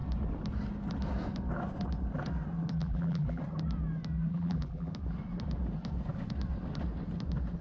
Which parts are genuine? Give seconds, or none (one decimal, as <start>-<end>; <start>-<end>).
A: 0.0-2.8; 3.4-4.3; 4.9-7.6